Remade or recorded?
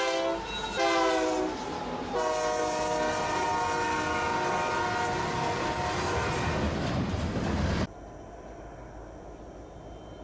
recorded